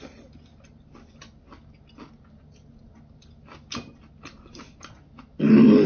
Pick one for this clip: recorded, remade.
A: recorded